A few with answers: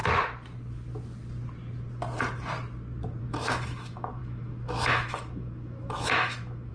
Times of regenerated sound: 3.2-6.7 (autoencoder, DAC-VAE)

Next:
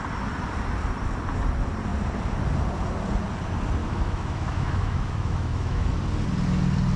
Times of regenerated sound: 3.8-5.9 (autoencoder, DAC-VAE)

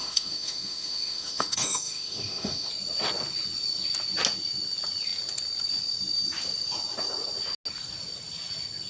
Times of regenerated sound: 0.0-2.7 (autoencoder, DAC-VAE)

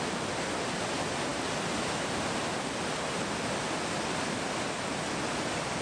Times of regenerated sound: none

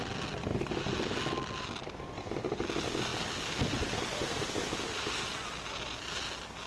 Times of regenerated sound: none

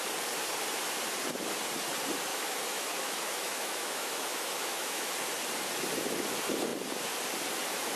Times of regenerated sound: 2.3-5.1 (autoencoder, DAC-VAE)

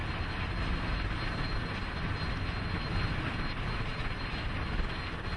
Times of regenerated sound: none